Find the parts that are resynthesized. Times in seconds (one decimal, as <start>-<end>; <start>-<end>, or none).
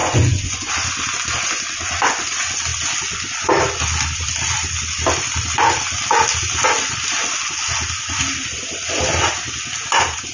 0.0-0.7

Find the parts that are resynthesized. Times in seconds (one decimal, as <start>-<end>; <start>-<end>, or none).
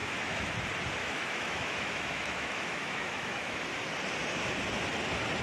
0.0-0.5; 1.0-3.6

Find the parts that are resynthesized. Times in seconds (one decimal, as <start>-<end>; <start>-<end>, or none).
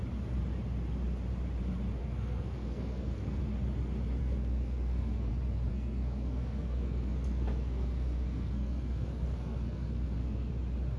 2.0-3.4; 4.2-5.3; 5.7-10.5